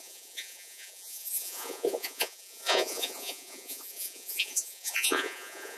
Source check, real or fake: fake